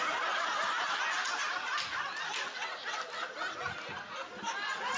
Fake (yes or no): no